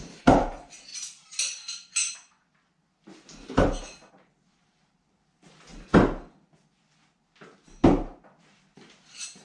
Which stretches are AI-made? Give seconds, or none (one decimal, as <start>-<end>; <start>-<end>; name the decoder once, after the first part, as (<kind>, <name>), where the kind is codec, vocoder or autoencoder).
0.0-0.9 (vocoder, BigVGAN v2); 4.1-5.7; 7.6-9.4